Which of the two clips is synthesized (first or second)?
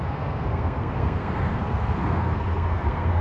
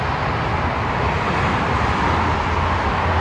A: first